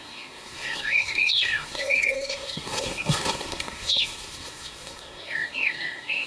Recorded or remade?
remade